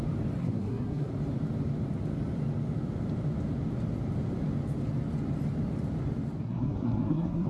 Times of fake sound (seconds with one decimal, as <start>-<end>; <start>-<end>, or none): 0.4-1.1; 6.4-7.5